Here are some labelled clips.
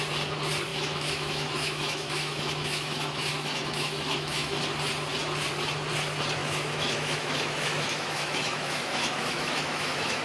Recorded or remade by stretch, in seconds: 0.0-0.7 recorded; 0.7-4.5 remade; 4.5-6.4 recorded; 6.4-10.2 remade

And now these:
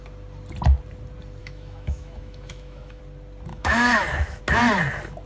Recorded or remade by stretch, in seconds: 0.0-1.4 recorded; 1.4-3.0 remade; 3.0-3.5 recorded; 3.5-4.4 remade; 4.4-5.3 recorded

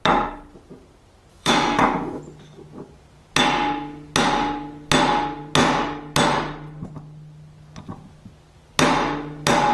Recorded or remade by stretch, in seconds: 0.0-1.3 recorded; 1.3-2.2 remade; 2.2-9.7 recorded

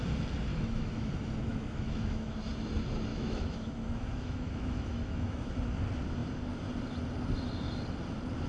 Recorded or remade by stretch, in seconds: 0.0-0.5 recorded; 0.5-1.1 remade; 1.1-1.5 recorded; 1.5-2.5 remade; 2.5-3.1 recorded; 3.1-5.5 remade; 5.5-8.5 recorded